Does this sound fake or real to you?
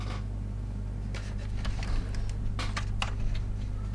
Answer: real